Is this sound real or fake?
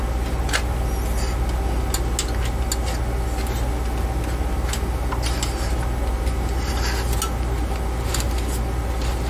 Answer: real